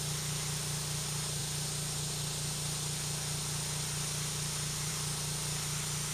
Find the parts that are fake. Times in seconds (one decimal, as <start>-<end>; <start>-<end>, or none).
none